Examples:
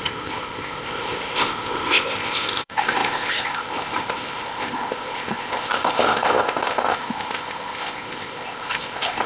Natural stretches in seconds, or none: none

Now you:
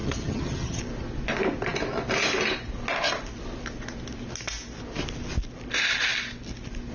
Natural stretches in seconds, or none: 0.8-6.9

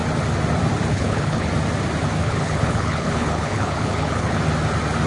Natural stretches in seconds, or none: 0.0-0.9; 1.5-2.2; 4.4-5.1

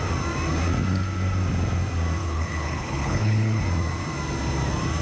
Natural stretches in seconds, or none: 0.0-2.2; 3.6-5.0

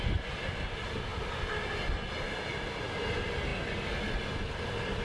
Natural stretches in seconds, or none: 0.0-5.0

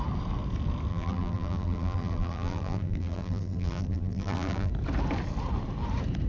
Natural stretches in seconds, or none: 0.0-0.9; 4.7-6.3

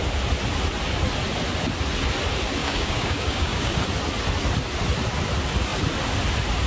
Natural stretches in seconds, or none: 0.0-2.6; 3.8-6.7

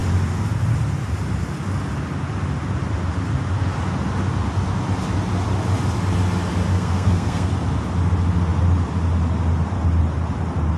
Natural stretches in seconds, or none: 0.0-6.7; 7.5-10.8